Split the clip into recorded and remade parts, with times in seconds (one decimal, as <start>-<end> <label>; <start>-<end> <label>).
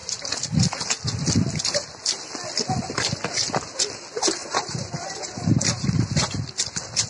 0.0-4.4 recorded; 4.4-5.6 remade; 5.6-7.1 recorded